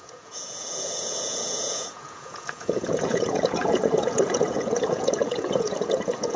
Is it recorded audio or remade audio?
remade